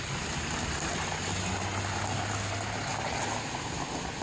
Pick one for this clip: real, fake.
real